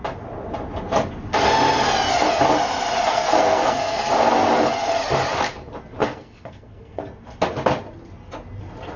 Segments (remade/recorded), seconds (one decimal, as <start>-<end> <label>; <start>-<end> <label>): 0.0-3.1 recorded; 3.1-4.1 remade; 4.1-6.0 recorded; 6.0-7.0 remade; 7.0-9.0 recorded